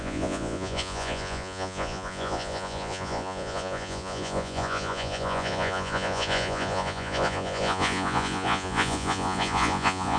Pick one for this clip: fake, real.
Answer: fake